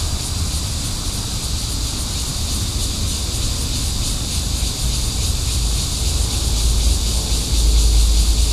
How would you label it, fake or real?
real